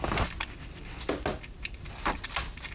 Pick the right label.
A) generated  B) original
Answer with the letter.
B